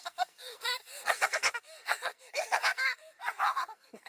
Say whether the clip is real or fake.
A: fake